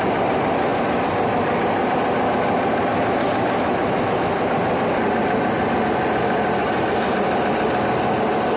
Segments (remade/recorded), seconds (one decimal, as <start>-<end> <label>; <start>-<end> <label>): 0.0-8.6 recorded